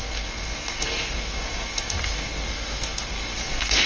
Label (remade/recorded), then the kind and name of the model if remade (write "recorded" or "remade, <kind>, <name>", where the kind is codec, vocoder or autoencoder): remade, codec, SNAC